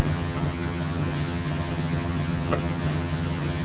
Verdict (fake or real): fake